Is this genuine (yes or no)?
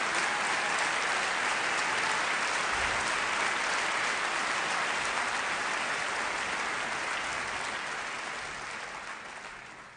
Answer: yes